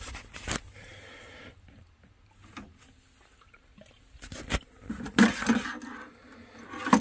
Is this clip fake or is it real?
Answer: real